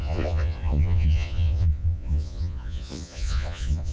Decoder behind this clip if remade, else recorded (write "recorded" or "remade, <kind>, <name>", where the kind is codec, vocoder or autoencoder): remade, vocoder, Vocos